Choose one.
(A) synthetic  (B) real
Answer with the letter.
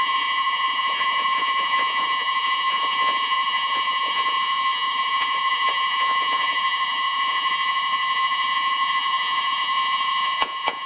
A